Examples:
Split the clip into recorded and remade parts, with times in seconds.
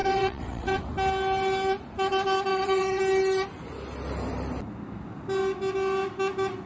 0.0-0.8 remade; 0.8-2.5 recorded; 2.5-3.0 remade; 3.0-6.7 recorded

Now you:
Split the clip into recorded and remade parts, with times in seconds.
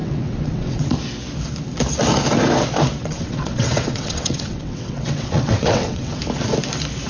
0.0-0.9 remade; 0.9-3.0 recorded; 3.0-6.2 remade; 6.2-7.1 recorded